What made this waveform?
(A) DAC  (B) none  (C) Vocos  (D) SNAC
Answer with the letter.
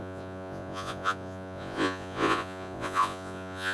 C